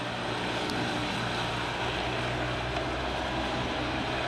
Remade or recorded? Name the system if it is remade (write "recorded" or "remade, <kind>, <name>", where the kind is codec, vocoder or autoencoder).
recorded